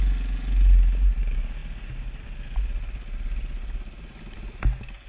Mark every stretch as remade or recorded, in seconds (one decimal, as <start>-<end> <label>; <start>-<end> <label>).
0.0-5.1 recorded